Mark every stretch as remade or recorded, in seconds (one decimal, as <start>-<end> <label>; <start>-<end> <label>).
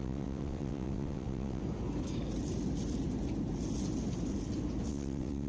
0.0-1.6 remade; 1.6-4.9 recorded; 4.9-5.5 remade